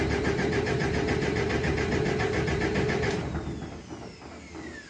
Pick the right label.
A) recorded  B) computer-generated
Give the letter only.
A